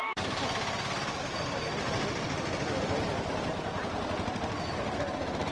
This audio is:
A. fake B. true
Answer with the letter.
B